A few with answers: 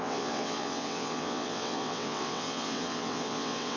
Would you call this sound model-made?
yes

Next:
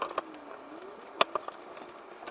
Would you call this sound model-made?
no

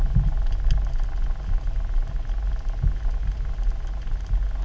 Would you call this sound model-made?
no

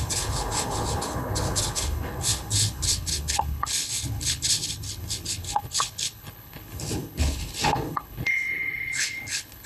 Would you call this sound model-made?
yes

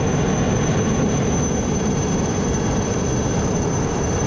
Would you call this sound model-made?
yes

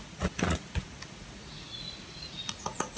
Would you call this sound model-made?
yes